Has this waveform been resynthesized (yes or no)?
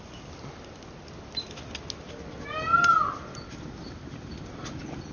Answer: no